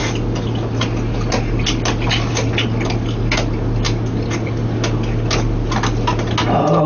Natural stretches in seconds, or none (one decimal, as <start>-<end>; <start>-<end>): 0.0-6.9